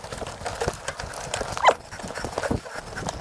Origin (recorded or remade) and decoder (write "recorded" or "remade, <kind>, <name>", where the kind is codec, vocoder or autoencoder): recorded